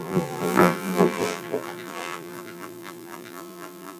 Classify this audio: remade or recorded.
remade